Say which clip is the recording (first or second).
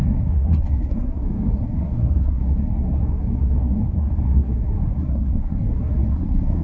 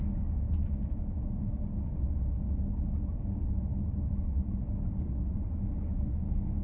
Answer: second